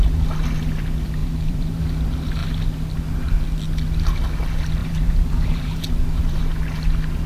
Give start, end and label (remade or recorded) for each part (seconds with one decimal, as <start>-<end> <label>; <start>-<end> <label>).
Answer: 0.0-1.2 recorded; 1.2-1.8 remade; 1.8-4.8 recorded; 4.8-6.4 remade; 6.4-7.3 recorded